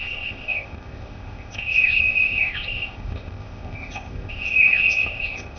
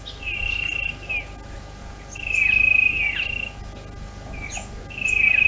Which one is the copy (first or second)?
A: first